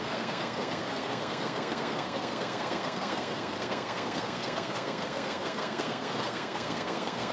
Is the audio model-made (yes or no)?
yes